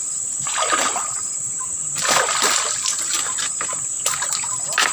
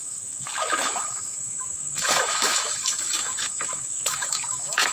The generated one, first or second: second